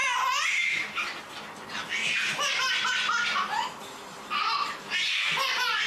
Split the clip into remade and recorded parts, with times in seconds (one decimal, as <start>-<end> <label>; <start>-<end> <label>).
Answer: 0.0-5.9 recorded